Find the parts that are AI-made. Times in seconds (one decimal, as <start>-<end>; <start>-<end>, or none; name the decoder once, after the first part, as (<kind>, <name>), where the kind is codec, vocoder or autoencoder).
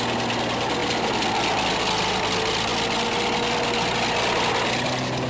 none